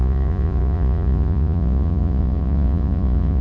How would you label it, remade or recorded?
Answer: remade